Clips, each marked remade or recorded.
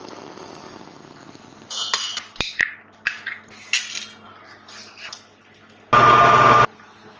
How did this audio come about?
recorded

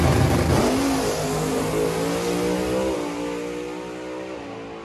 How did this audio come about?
recorded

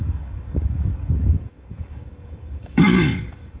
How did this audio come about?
remade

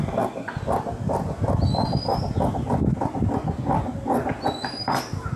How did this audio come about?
recorded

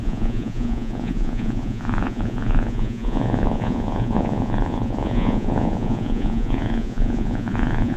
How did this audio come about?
remade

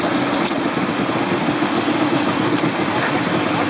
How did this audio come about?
recorded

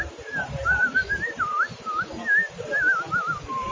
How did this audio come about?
remade